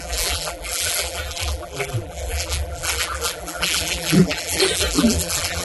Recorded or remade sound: remade